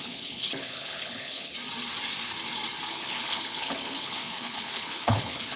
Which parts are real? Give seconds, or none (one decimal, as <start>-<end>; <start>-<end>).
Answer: 1.5-2.9